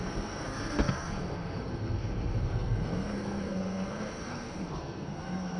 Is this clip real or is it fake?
fake